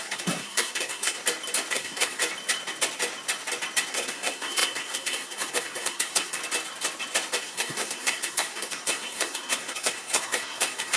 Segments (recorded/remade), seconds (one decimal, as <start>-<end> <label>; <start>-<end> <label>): 0.0-1.2 remade; 1.2-1.7 recorded; 1.7-2.2 remade; 2.2-3.9 recorded; 3.9-6.4 remade; 6.4-7.4 recorded; 7.4-11.0 remade